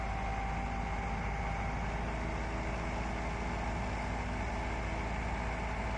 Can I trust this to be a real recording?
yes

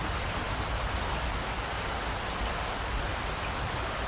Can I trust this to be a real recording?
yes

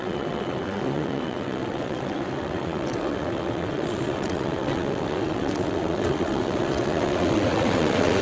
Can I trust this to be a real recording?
no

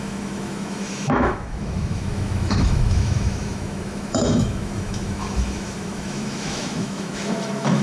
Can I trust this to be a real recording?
no